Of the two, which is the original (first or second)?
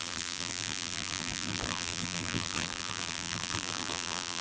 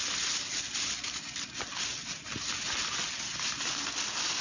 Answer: second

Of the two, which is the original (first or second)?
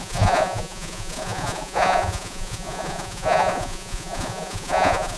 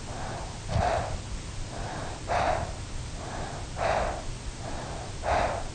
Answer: second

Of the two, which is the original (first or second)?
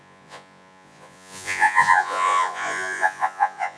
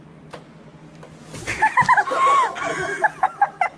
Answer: second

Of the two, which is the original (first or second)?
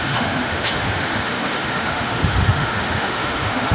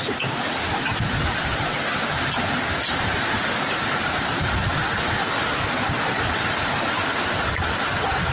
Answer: second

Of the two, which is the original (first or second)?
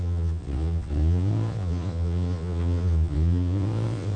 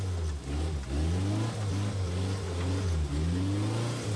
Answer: second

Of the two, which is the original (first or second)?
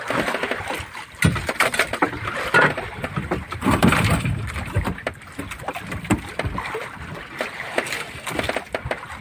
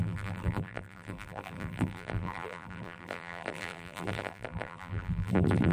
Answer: first